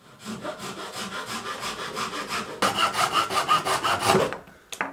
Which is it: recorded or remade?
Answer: recorded